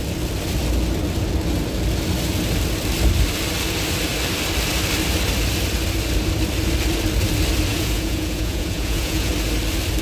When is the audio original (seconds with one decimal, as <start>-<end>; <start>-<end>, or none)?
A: 0.0-7.7; 9.3-10.0